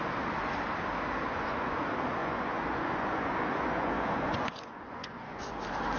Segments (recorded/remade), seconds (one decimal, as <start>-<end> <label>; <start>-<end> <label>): 0.0-1.3 recorded; 1.3-1.8 remade; 1.8-2.2 recorded; 2.2-5.5 remade; 5.5-6.0 recorded

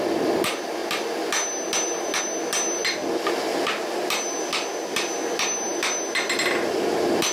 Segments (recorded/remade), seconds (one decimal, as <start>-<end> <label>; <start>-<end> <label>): 0.0-7.3 recorded